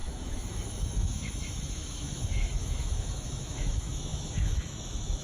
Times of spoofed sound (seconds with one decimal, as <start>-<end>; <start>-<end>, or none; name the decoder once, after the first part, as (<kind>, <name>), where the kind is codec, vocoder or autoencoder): 0.0-5.2 (autoencoder, DAC-VAE)